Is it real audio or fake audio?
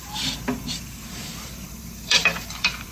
fake